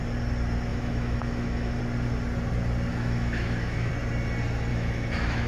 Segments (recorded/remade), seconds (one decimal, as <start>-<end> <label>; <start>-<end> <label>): 0.0-0.7 recorded; 0.7-1.8 remade; 1.8-2.9 recorded; 2.9-3.9 remade; 3.9-4.7 recorded; 4.7-5.5 remade